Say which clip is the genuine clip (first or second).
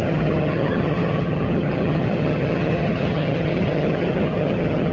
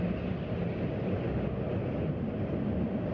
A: second